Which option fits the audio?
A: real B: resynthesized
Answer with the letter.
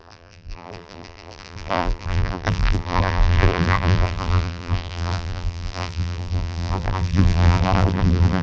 B